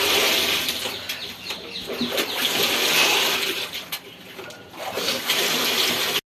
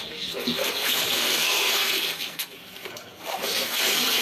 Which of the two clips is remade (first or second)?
second